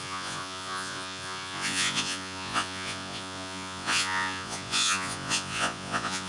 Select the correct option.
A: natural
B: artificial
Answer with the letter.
B